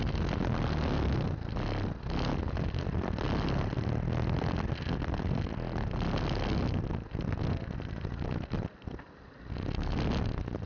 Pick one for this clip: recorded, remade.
recorded